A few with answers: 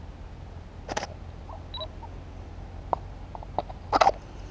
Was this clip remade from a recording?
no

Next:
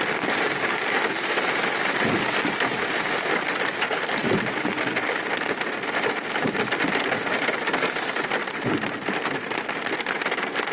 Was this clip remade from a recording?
no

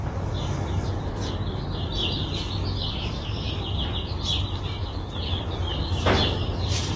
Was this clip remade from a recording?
no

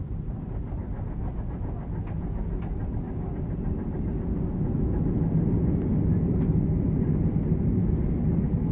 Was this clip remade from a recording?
no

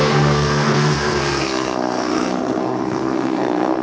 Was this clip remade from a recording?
yes